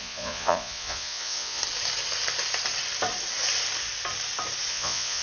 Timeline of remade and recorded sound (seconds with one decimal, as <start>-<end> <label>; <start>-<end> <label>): 0.0-1.6 remade; 1.6-4.7 recorded; 4.7-5.2 remade